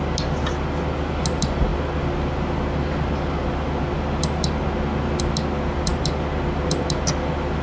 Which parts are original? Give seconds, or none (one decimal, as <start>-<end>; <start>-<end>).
0.0-7.6